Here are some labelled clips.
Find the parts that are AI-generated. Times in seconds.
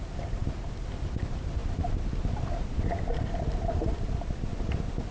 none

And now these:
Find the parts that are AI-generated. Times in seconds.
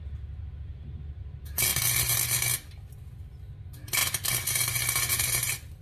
none